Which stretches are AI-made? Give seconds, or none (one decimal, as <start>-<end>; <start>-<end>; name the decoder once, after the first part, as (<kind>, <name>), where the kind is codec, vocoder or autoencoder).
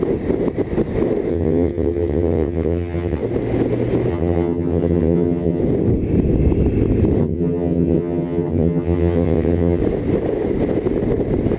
1.3-3.2 (vocoder, HiFi-GAN); 4.1-5.6; 7.2-9.8